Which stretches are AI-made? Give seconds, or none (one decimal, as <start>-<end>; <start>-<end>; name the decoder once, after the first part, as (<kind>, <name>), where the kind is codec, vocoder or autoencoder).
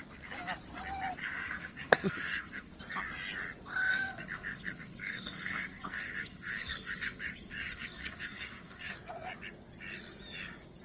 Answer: 1.2-2.7 (codec, SNAC); 3.9-8.9